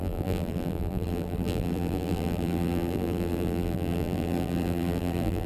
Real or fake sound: fake